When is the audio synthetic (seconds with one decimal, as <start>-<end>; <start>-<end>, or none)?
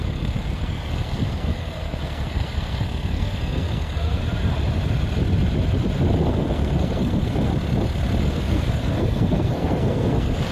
0.0-4.2; 6.3-7.5; 8.2-10.5